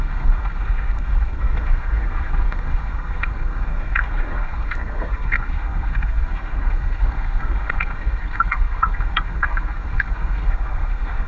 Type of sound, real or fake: fake